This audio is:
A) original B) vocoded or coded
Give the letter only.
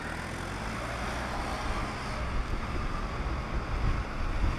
A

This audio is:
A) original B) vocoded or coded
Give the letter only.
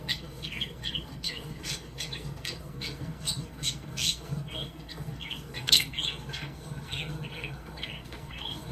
B